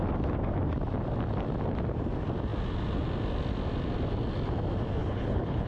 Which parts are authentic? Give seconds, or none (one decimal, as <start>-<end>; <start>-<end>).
0.0-5.0